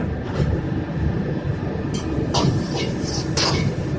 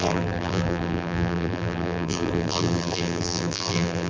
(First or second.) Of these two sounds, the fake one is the second